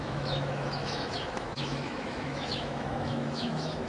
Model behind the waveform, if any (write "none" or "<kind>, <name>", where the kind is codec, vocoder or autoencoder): autoencoder, DAC-VAE